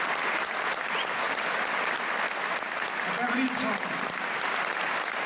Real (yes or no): yes